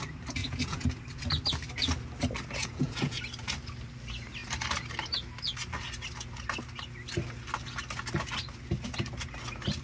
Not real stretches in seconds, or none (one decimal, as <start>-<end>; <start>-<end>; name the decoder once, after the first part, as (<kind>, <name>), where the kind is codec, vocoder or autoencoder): 0.4-0.9 (vocoder, Vocos); 2.6-3.2